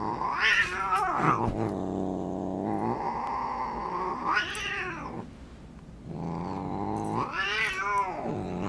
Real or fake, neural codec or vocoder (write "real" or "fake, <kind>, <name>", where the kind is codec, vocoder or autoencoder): real